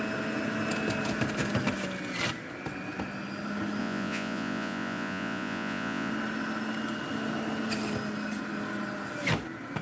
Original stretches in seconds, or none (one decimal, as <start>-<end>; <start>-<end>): 0.0-3.8; 6.1-9.8